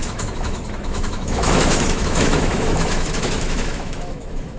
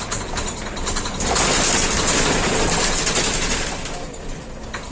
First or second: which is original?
second